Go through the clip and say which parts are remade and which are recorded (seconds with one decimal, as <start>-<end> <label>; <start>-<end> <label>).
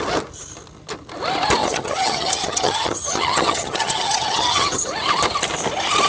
0.0-1.6 recorded; 1.6-4.9 remade; 4.9-6.1 recorded